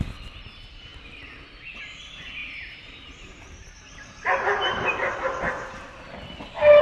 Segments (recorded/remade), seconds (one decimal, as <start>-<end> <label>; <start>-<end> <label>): 0.0-2.4 recorded; 2.4-5.1 remade; 5.1-6.8 recorded